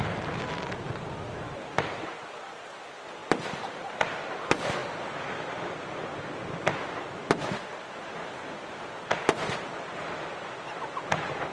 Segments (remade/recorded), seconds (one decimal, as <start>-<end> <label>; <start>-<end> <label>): 0.0-11.5 remade